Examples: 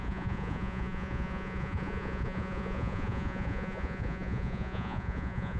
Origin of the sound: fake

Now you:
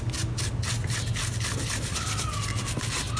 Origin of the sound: real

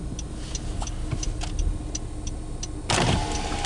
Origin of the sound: real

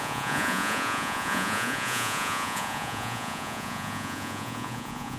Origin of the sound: fake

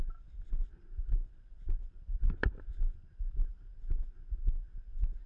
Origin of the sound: real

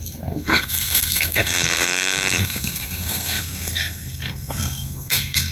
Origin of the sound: fake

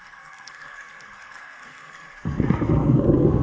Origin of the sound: fake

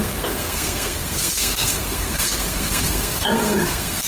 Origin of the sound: fake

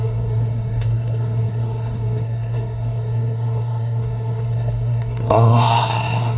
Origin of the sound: fake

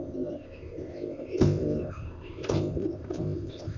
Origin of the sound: fake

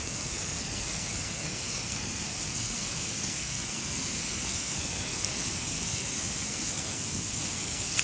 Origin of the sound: fake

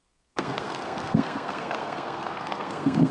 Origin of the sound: fake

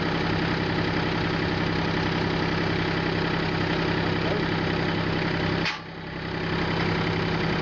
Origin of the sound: real